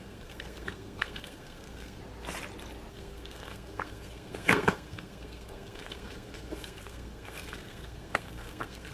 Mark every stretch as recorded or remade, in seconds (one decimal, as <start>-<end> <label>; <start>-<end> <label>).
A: 0.0-2.0 remade; 2.0-2.9 recorded; 2.9-8.9 remade